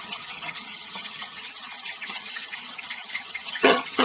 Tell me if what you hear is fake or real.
fake